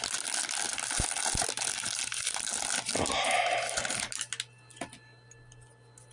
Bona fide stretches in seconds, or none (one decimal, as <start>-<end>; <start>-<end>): 0.0-6.1